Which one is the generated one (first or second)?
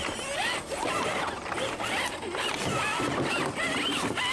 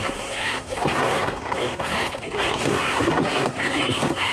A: second